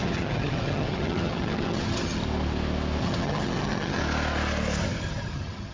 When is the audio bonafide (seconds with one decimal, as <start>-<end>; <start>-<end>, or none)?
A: 2.2-3.0; 4.0-4.8

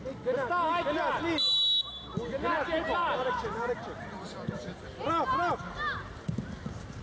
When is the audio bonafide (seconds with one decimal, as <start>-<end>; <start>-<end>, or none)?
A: 0.0-7.0

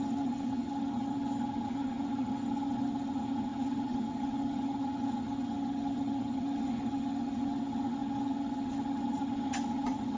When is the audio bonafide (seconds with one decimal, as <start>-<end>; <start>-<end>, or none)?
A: none

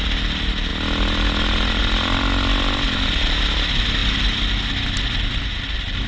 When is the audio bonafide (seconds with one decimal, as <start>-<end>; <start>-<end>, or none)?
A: 0.0-6.1